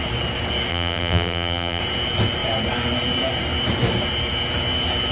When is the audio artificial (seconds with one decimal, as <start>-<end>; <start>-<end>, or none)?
0.7-1.8